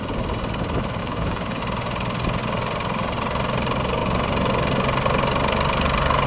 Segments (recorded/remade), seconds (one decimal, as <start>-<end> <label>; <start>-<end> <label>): 0.0-1.0 recorded; 1.0-1.6 remade; 1.6-6.3 recorded